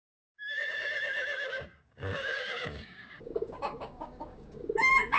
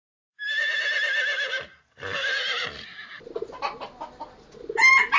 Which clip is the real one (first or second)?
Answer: second